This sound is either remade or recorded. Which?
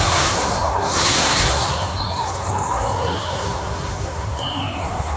remade